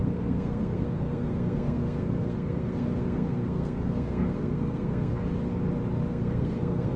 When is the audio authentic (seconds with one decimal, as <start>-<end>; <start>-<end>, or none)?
5.1-6.1